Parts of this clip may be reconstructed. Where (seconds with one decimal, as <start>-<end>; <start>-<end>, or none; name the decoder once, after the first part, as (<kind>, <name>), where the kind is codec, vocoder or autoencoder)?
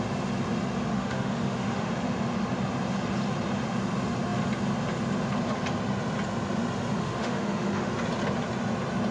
0.9-1.9 (autoencoder, DAC-VAE); 7.0-7.9